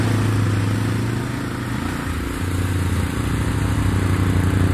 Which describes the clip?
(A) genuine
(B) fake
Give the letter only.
A